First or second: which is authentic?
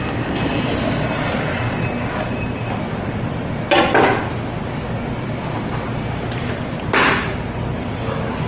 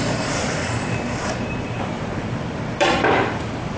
first